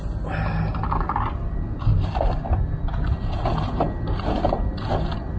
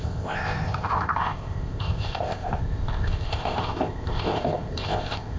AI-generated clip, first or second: second